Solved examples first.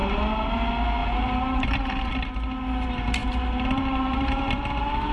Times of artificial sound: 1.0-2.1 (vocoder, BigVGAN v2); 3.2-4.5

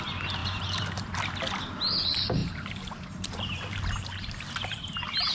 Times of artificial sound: 0.4-1.2 (vocoder, BigVGAN v2); 2.4-5.3

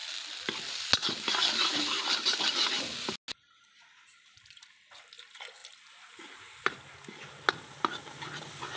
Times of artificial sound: none

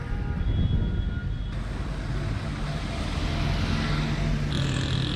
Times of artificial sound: none